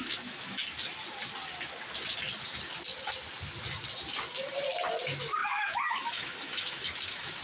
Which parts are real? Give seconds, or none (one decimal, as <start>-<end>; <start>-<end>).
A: 0.6-5.0